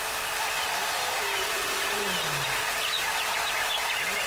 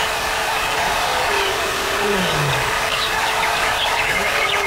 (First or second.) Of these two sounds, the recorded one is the first